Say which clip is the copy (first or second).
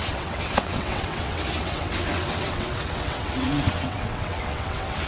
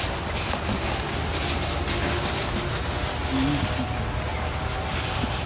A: first